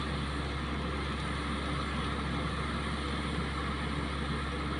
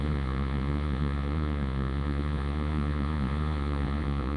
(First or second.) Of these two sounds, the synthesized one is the second